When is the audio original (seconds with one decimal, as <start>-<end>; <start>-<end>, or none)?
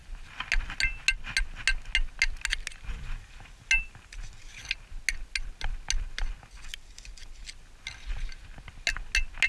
0.0-9.5